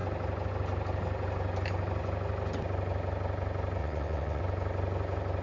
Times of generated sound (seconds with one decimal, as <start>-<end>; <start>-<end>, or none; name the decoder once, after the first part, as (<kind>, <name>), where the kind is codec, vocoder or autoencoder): 3.8-4.4 (vocoder, WaveNeXt)